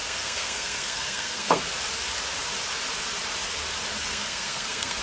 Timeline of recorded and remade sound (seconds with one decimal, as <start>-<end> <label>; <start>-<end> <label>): 0.0-1.6 remade; 1.6-4.0 recorded; 4.0-5.0 remade